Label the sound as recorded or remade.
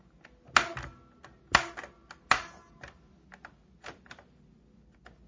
recorded